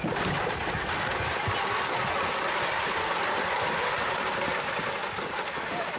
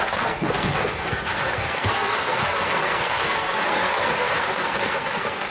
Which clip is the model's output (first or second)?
second